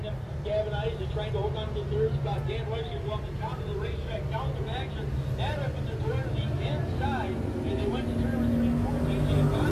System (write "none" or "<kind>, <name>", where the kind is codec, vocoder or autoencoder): none